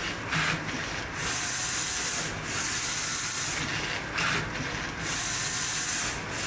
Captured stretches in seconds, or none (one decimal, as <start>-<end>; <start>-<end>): 0.0-6.5